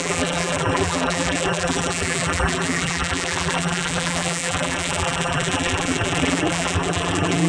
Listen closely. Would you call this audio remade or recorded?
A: remade